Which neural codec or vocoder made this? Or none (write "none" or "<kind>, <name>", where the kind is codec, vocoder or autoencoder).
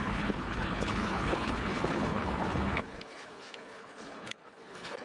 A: codec, HILCodec